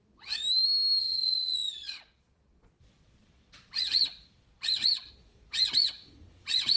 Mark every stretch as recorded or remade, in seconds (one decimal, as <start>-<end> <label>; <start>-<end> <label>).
0.0-0.4 remade; 0.4-1.0 recorded; 1.0-6.8 remade